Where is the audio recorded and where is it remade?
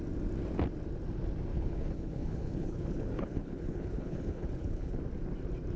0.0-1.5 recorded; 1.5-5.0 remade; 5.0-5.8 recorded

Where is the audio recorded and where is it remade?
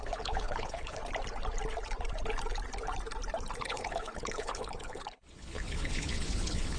0.0-1.0 remade; 1.0-3.6 recorded; 3.6-6.8 remade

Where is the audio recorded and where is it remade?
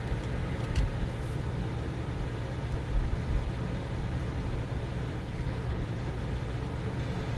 0.0-5.1 recorded; 5.1-6.2 remade; 6.2-7.4 recorded